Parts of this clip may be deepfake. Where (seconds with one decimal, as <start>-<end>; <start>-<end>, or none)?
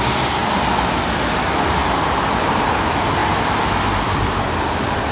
none